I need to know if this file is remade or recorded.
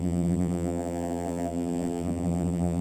remade